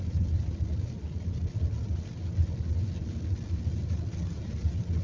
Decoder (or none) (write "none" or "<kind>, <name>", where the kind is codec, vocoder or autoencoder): none